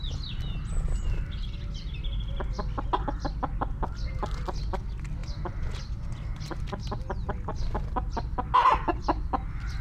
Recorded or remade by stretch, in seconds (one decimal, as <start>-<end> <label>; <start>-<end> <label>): 0.0-9.8 recorded